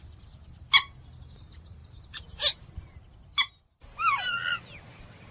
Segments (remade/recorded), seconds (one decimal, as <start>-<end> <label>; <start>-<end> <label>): 0.0-5.3 recorded